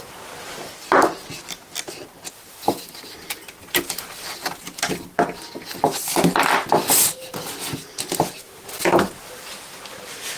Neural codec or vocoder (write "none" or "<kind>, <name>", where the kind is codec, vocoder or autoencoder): none